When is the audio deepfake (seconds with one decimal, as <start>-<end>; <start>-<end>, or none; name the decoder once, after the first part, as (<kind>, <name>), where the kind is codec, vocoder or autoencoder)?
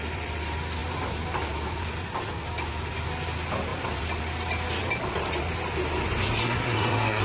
6.4-7.2 (codec, SNAC)